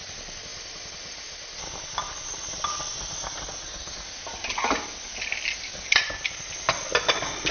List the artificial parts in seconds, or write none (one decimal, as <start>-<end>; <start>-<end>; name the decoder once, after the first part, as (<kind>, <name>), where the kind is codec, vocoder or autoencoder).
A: none